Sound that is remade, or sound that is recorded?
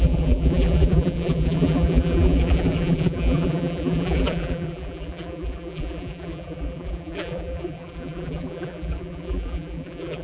remade